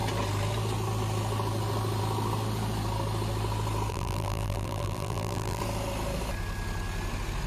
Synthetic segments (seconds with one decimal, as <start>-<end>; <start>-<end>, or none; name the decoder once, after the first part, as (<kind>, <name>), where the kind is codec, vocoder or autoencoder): 3.9-5.6 (vocoder, BigVGAN v2)